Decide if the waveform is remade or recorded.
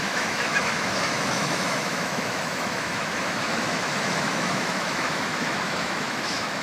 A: remade